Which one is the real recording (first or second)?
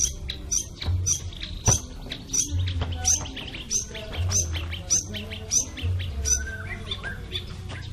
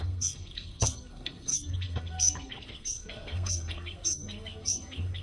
first